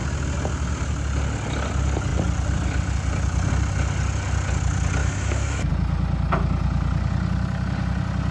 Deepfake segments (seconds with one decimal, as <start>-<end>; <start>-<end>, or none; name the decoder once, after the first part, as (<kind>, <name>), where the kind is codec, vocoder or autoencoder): 5.0-5.7 (autoencoder, DAC-VAE)

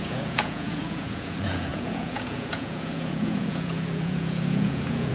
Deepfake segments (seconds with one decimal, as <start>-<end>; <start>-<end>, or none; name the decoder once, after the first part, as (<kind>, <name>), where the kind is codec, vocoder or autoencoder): 0.0-5.1 (vocoder, Vocos)

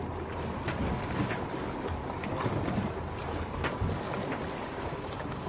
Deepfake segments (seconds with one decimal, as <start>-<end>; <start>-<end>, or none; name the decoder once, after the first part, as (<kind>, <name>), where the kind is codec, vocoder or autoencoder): 4.6-5.5 (codec, DAC)